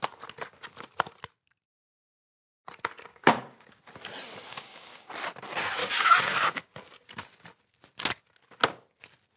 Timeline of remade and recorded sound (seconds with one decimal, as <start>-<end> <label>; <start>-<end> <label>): 0.0-3.1 recorded; 3.1-3.8 remade; 3.8-4.5 recorded; 4.5-5.1 remade; 5.1-5.8 recorded; 5.8-6.8 remade; 6.8-9.4 recorded